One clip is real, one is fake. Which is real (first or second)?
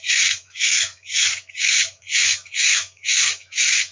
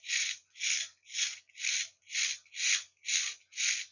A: second